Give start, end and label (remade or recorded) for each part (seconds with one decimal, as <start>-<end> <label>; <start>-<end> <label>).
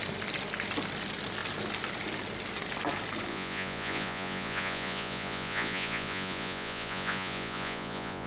0.0-3.3 recorded; 3.3-8.3 remade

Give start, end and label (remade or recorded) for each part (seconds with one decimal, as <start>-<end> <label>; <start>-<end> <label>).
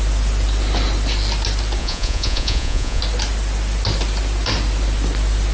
0.0-1.8 recorded; 1.8-3.0 remade; 3.0-5.5 recorded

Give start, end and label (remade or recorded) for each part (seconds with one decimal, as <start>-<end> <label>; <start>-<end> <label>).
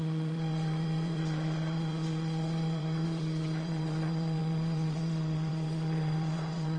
0.0-6.8 remade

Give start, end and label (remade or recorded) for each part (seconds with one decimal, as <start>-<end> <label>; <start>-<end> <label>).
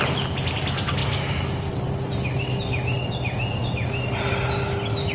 0.0-5.1 recorded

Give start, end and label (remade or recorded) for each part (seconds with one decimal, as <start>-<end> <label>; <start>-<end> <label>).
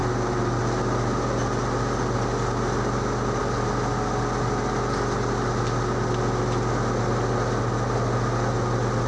0.0-9.1 recorded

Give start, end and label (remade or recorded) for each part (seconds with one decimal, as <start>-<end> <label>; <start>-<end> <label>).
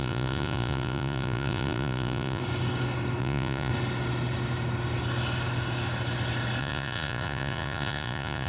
0.0-2.4 remade; 2.4-3.2 recorded; 3.2-3.7 remade; 3.7-6.6 recorded; 6.6-8.5 remade